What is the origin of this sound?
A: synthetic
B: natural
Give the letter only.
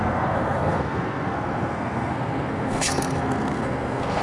A